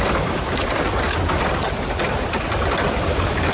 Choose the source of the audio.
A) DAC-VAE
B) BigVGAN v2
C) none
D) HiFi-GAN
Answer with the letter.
B